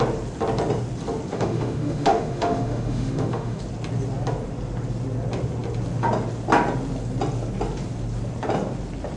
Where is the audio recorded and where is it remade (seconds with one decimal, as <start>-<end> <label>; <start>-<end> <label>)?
0.0-1.3 recorded; 1.3-3.6 remade; 3.6-9.2 recorded